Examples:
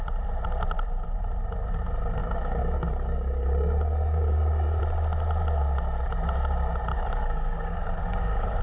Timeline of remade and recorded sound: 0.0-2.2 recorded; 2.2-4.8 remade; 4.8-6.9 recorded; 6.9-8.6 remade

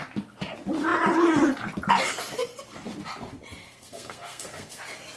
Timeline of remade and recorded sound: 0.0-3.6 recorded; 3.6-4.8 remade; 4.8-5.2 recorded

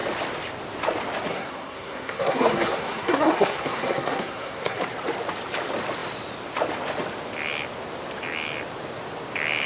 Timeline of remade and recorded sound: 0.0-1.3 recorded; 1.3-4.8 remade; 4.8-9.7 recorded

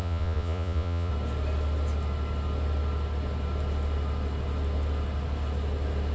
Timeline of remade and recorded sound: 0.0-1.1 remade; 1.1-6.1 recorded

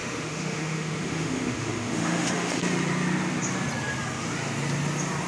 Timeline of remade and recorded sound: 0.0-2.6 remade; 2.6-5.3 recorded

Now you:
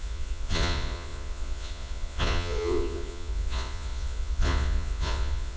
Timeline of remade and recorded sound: 0.0-5.6 remade

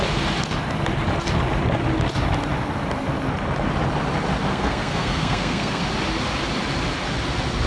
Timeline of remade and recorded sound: 0.0-4.5 recorded; 4.5-5.8 remade; 5.8-7.7 recorded

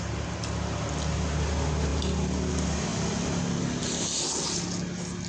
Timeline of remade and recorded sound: 0.0-5.3 recorded